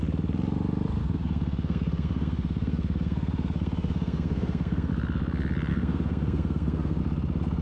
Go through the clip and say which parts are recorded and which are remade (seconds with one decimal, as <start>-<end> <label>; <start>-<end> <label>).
0.0-1.0 recorded; 1.0-4.9 remade; 4.9-5.7 recorded; 5.7-7.0 remade; 7.0-7.6 recorded